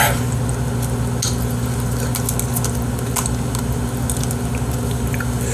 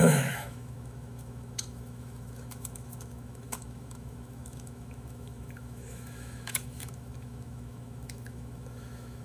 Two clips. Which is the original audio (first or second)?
first